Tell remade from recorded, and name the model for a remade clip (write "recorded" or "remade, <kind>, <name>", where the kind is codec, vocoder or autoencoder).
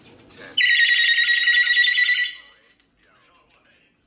recorded